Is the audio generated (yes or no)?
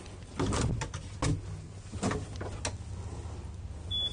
no